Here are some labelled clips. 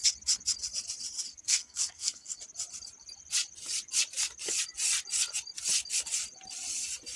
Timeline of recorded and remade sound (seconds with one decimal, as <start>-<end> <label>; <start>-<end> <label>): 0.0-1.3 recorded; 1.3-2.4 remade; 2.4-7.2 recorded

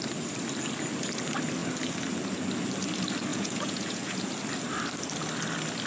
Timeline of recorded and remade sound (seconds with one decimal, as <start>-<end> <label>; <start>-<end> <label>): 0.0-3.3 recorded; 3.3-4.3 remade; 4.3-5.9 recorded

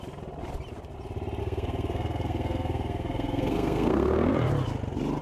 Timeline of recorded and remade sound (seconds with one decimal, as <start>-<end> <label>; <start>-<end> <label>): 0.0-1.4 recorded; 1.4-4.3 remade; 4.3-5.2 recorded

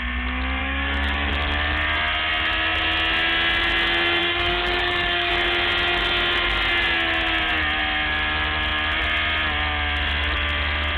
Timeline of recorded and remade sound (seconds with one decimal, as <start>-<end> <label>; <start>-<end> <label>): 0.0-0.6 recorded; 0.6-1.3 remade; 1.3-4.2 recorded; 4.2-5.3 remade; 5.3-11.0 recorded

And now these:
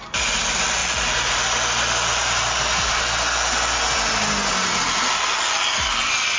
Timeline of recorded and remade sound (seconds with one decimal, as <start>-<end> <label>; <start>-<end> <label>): 0.0-6.4 recorded

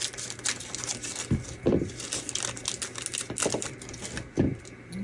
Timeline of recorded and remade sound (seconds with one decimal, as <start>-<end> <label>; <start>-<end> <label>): 0.0-5.0 recorded

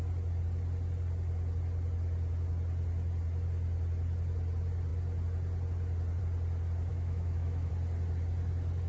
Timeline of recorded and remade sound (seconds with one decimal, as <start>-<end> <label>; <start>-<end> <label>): 0.0-6.9 recorded; 6.9-7.7 remade; 7.7-8.9 recorded